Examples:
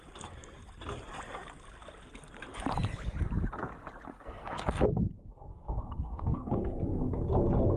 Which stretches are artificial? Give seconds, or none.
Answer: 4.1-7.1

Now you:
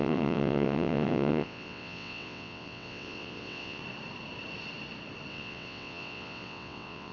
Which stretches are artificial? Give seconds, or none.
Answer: 0.0-3.8; 5.3-7.1

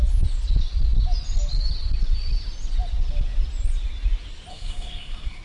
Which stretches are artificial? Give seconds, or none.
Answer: 4.5-5.4

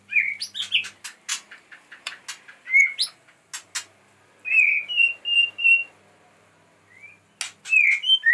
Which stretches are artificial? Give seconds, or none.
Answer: 1.3-2.2

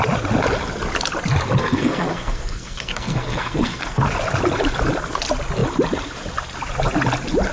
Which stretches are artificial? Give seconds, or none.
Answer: 1.6-4.0

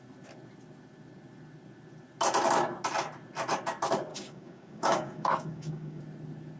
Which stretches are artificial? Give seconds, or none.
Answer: 4.1-6.0